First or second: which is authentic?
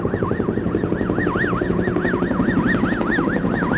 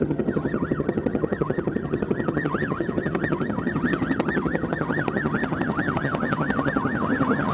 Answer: first